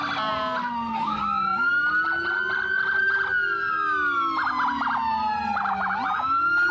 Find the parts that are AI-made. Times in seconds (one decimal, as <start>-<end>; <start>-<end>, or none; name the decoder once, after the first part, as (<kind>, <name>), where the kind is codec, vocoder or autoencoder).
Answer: 0.6-1.2 (codec, SNAC)